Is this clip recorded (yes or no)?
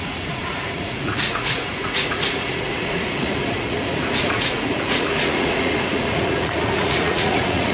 no